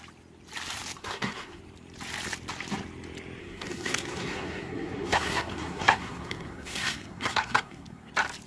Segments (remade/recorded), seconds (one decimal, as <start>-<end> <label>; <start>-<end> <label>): 0.0-1.0 recorded; 1.0-1.6 remade; 1.6-3.4 recorded; 3.4-8.1 remade; 8.1-8.5 recorded